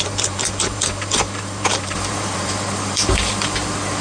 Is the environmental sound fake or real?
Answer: fake